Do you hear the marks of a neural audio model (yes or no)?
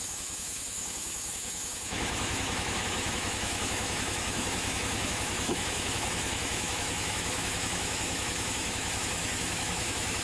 yes